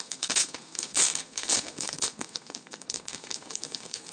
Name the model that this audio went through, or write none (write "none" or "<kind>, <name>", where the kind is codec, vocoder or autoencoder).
codec, SNAC